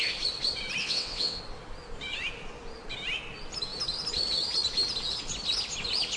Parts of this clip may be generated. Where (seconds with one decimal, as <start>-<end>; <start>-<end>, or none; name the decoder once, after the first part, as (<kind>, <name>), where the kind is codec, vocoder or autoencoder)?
0.8-1.4 (vocoder, WaveNeXt)

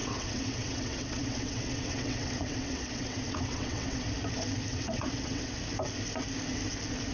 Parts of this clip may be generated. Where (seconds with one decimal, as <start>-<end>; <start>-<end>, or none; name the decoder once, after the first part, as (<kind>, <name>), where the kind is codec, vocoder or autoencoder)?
0.0-4.0 (vocoder, WaveNeXt); 4.7-5.5

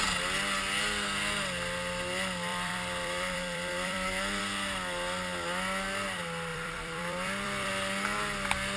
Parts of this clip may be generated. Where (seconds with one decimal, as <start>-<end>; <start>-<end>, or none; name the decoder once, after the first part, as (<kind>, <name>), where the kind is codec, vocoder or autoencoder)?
2.5-4.4 (vocoder, BigVGAN v2); 6.5-7.7

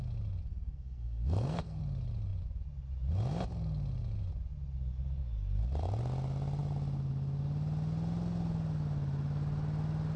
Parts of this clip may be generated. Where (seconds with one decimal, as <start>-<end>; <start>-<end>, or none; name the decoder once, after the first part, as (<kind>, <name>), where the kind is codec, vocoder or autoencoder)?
0.5-1.8 (codec, SNAC)

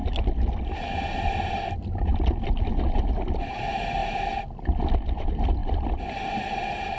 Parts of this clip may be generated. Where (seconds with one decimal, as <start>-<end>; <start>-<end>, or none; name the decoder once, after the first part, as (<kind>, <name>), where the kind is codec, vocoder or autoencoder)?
none